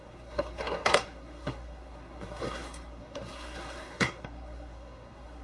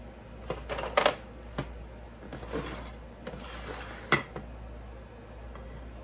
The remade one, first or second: first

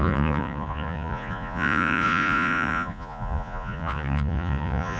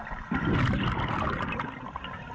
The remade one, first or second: first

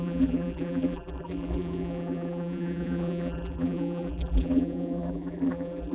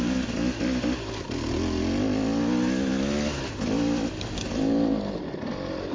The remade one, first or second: first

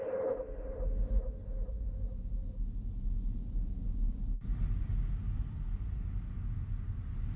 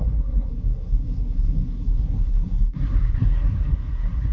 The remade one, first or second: second